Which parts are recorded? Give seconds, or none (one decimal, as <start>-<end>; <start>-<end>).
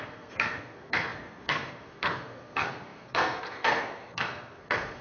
none